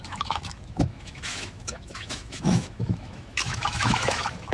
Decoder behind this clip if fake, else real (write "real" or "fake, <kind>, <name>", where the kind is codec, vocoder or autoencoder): fake, autoencoder, DAC-VAE